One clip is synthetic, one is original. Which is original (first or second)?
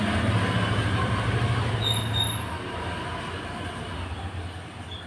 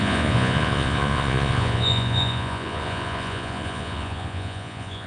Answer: first